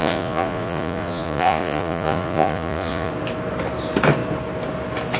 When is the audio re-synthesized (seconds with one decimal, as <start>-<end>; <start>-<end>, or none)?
0.0-3.1